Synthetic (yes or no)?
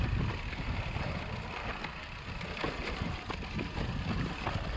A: no